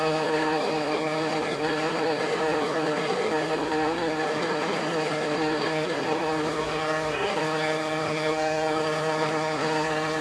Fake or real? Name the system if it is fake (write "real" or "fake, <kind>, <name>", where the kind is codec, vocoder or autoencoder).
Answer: fake, codec, SNAC